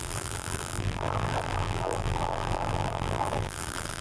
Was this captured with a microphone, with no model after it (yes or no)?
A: no